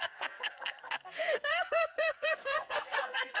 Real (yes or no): no